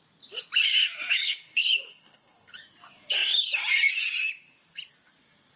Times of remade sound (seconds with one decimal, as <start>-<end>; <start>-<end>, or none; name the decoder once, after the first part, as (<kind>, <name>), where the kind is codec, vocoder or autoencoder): 1.2-2.6 (codec, HILCodec)